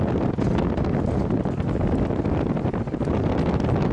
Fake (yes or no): no